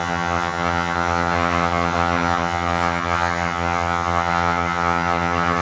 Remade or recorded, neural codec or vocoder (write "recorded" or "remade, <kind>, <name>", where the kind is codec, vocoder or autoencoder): remade, vocoder, HiFi-GAN